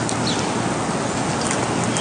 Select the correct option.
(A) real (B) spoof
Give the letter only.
A